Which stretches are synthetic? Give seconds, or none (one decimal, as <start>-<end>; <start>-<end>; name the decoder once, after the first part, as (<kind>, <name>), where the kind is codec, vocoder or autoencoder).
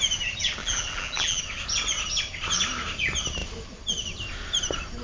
0.6-1.4 (vocoder, BigVGAN v2)